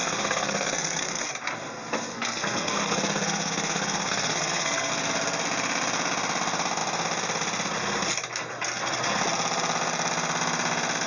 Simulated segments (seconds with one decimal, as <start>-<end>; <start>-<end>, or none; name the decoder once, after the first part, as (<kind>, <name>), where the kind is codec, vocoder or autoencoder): 0.0-1.3 (codec, SNAC); 2.1-4.9